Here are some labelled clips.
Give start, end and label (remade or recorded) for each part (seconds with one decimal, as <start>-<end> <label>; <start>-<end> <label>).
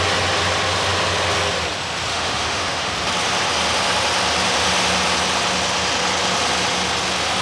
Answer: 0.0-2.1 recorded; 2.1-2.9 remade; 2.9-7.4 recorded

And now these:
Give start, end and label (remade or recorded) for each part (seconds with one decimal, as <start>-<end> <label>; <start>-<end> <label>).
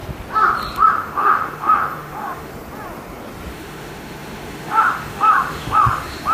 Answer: 0.0-0.9 recorded; 0.9-2.5 remade; 2.5-3.5 recorded; 3.5-6.3 remade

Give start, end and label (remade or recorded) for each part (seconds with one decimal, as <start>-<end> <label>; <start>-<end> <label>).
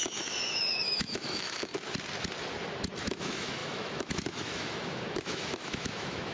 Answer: 0.0-1.7 remade; 1.7-3.0 recorded; 3.0-6.3 remade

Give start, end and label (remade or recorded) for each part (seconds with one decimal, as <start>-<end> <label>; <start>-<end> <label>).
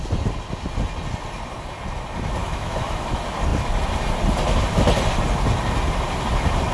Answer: 0.0-2.4 recorded; 2.4-3.1 remade; 3.1-6.7 recorded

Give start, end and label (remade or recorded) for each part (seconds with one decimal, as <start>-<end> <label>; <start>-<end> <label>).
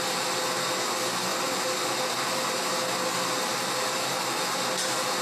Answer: 0.0-5.2 recorded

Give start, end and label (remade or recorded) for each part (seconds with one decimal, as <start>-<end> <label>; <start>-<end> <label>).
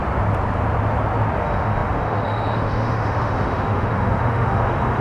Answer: 0.0-1.4 recorded; 1.4-5.0 remade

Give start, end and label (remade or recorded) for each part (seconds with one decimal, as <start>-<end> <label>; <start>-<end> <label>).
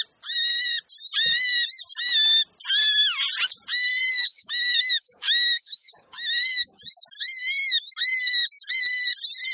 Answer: 0.0-4.0 recorded; 4.0-6.8 remade; 6.8-9.5 recorded